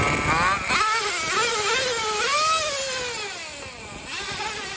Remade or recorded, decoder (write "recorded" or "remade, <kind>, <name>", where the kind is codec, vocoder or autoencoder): recorded